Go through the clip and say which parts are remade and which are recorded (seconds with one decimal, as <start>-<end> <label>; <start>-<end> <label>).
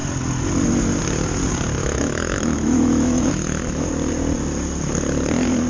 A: 0.0-1.8 recorded; 1.8-3.9 remade; 3.9-5.7 recorded